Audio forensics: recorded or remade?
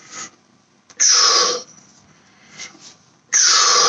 recorded